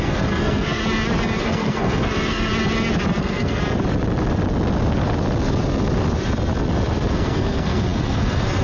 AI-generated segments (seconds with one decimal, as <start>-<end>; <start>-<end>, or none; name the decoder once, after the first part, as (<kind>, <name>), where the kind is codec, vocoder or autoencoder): 0.0-0.8 (codec, SNAC); 1.4-2.5; 3.2-3.6; 7.1-8.6